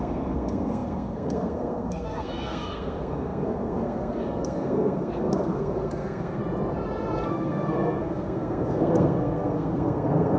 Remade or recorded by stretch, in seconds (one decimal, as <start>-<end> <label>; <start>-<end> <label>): 0.0-6.4 remade; 6.4-7.3 recorded; 7.3-10.4 remade